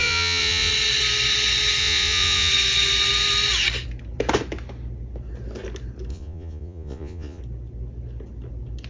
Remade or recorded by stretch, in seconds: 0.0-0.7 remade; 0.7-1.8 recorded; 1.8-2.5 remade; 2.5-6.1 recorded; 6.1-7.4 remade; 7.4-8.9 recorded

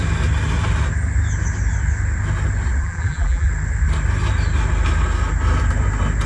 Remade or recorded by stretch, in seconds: 0.0-2.8 recorded; 2.8-3.5 remade; 3.5-6.3 recorded

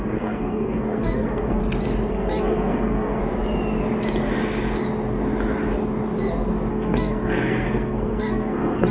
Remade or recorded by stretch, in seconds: 0.0-1.6 remade; 1.6-2.1 recorded; 2.1-3.2 remade; 3.2-6.7 recorded; 6.7-8.9 remade

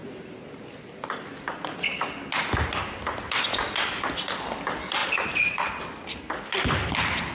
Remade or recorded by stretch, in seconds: 0.0-5.0 recorded; 5.0-5.8 remade; 5.8-7.3 recorded

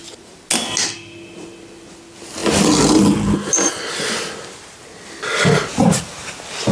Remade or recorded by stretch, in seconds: 0.0-6.7 recorded

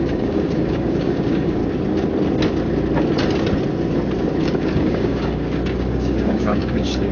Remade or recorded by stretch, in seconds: 0.0-1.6 remade; 1.6-4.4 recorded; 4.4-7.1 remade